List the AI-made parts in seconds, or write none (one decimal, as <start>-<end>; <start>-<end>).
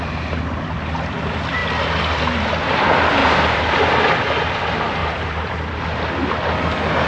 3.2-3.9; 5.0-5.8